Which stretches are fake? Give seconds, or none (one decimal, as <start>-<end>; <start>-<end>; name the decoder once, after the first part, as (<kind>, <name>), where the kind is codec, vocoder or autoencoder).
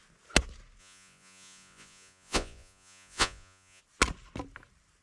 0.8-3.8 (vocoder, Vocos)